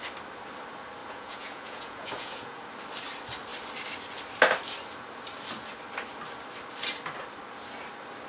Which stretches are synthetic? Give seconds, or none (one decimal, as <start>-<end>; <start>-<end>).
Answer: 1.0-2.6